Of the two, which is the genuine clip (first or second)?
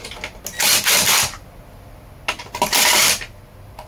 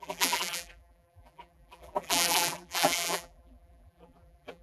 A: first